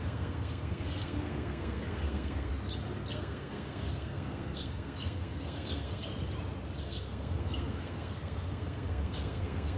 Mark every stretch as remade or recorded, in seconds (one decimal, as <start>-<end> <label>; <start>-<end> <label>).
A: 0.0-2.5 remade; 2.5-3.1 recorded; 3.1-6.1 remade; 6.1-6.8 recorded; 6.8-9.8 remade